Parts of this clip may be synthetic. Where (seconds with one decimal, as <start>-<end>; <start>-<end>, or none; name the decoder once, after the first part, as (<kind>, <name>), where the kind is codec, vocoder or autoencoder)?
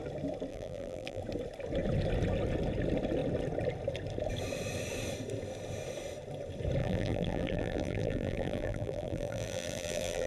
0.5-1.2 (vocoder, BigVGAN v2); 6.8-10.3